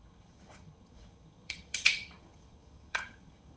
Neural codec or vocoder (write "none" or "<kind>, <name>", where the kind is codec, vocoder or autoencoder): vocoder, HiFi-GAN